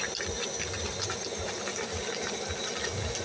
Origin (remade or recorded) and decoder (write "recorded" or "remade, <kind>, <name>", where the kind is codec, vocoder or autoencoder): recorded